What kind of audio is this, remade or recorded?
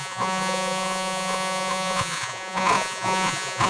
remade